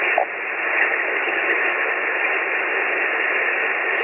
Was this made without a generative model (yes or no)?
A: yes